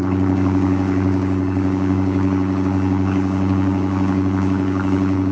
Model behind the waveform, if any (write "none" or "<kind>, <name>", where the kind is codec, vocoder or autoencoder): codec, DAC